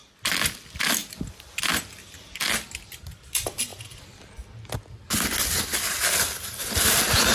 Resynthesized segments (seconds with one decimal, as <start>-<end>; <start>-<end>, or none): none